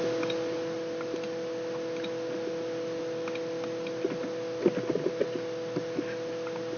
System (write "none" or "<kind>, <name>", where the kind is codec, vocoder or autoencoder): none